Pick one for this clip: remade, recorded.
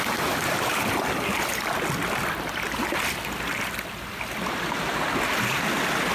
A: recorded